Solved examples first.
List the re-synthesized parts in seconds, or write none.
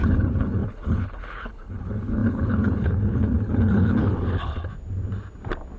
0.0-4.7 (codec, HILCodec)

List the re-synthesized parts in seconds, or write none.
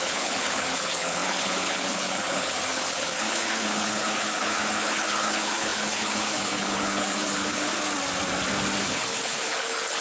0.0-7.7 (codec, HILCodec); 8.8-10.0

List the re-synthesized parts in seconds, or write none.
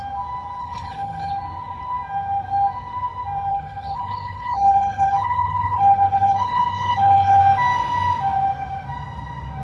0.6-1.3 (codec, HILCodec); 3.5-7.4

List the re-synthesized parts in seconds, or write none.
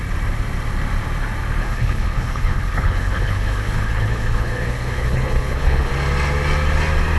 1.6-5.9 (codec, HILCodec)